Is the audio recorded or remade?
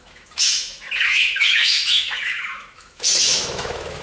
remade